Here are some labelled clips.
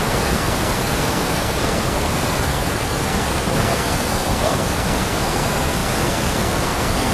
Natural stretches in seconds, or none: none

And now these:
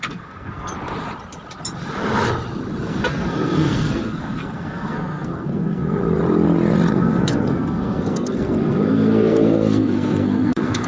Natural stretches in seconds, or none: 0.7-2.8; 6.0-6.9

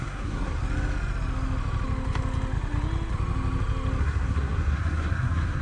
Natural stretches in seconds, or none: 0.6-4.0